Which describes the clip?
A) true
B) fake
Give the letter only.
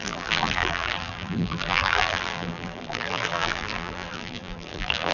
B